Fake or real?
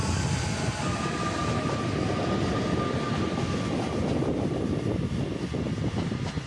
real